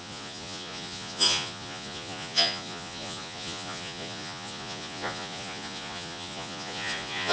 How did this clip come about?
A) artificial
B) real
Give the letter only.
A